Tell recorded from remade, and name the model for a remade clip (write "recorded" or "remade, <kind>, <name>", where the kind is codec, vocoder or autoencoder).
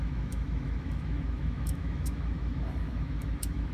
remade, autoencoder, DAC-VAE